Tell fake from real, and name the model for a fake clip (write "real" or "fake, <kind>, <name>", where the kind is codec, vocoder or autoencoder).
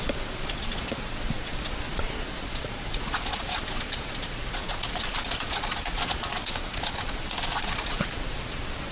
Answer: fake, vocoder, Vocos